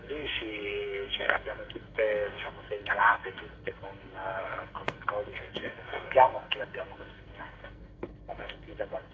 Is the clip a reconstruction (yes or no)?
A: yes